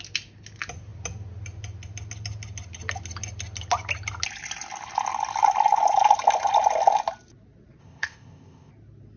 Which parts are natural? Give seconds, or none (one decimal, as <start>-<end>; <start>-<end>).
0.0-7.8; 8.7-9.2